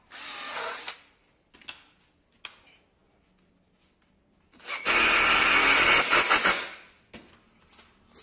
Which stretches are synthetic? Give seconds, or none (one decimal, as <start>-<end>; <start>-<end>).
none